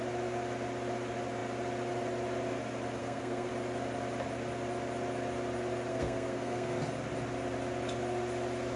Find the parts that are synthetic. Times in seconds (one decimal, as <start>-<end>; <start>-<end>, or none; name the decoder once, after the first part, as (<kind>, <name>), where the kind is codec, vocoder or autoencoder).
3.0-3.5 (codec, SNAC); 5.9-6.8